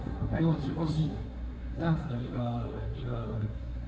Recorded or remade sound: remade